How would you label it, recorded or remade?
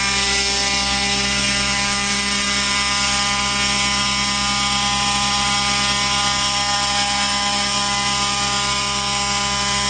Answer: recorded